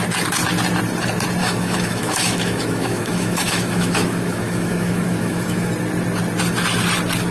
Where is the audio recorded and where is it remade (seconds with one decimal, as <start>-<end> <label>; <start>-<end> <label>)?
0.0-1.4 recorded; 1.4-5.7 remade; 5.7-7.3 recorded